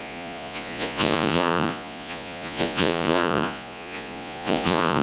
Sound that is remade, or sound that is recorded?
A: remade